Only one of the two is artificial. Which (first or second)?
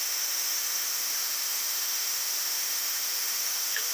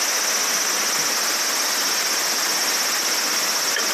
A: first